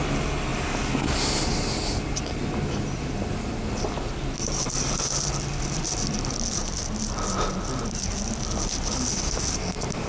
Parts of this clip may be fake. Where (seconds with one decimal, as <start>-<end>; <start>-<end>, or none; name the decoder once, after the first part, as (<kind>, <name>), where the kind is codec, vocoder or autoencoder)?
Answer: none